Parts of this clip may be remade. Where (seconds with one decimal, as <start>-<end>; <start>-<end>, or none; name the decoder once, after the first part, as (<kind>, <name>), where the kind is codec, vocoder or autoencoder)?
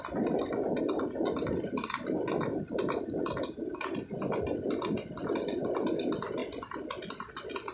none